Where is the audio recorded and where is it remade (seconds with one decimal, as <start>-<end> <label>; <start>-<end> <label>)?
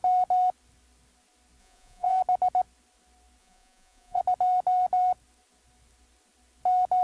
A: 0.0-1.6 recorded; 1.6-2.2 remade; 2.2-3.4 recorded; 3.4-4.2 remade; 4.2-7.0 recorded